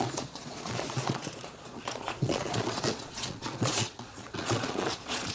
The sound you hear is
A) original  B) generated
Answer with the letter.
B